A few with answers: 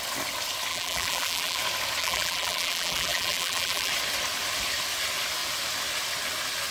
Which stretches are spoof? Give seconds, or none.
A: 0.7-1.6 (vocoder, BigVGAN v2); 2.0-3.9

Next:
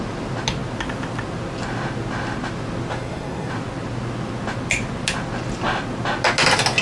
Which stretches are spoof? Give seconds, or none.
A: 2.9-3.5 (codec, SNAC)

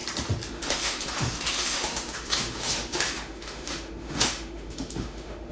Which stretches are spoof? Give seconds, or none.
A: 0.5-5.5 (autoencoder, DAC-VAE)

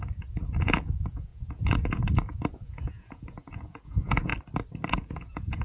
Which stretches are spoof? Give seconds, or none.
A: 0.0-4.3 (vocoder, Vocos); 4.9-5.6